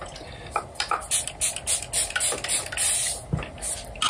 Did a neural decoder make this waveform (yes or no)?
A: no